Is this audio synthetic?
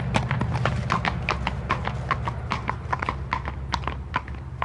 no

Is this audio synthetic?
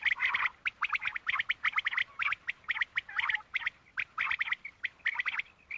no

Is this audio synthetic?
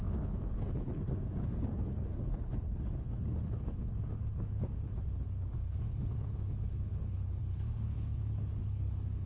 yes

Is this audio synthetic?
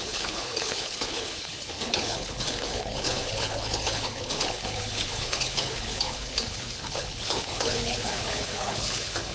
yes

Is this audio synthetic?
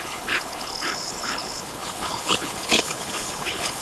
yes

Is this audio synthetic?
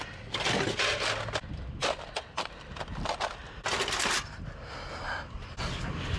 no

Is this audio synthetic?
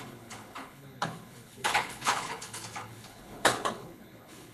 yes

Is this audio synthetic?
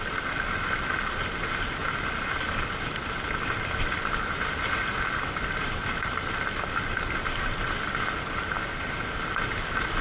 no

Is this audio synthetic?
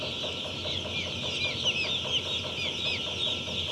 no